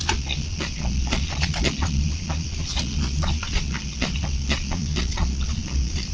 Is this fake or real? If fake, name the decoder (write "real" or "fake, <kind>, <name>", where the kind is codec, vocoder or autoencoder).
fake, vocoder, Vocos